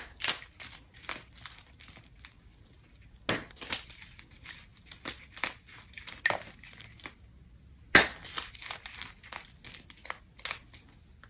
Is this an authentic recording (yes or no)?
yes